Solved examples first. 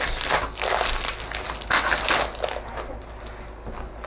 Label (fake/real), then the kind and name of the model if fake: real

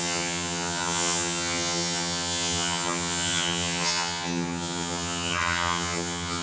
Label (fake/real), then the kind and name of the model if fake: fake, vocoder, HiFi-GAN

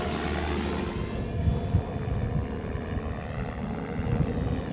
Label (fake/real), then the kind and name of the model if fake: real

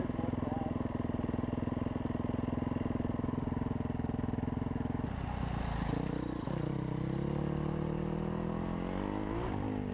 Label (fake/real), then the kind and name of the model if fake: real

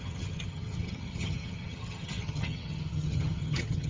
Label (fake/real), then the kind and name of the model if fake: fake, vocoder, HiFi-GAN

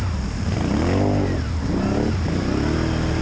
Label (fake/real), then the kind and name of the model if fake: real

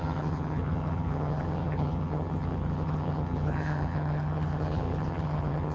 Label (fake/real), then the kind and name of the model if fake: fake, vocoder, HiFi-GAN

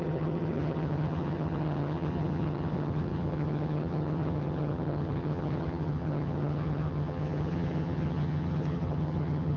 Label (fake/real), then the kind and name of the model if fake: fake, vocoder, HiFi-GAN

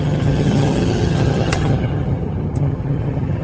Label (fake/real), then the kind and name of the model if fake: fake, vocoder, HiFi-GAN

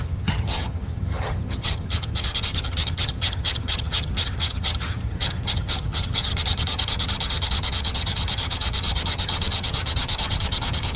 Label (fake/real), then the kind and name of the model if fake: fake, vocoder, HiFi-GAN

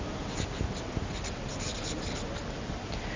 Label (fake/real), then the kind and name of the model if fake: real